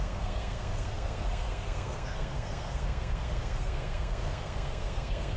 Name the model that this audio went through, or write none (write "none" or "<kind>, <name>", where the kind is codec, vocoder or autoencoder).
codec, SNAC